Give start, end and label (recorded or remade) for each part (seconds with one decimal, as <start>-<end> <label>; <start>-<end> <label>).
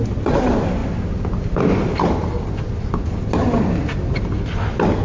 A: 0.0-5.0 recorded